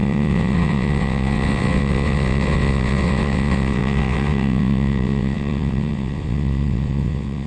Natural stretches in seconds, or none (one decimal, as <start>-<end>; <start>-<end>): none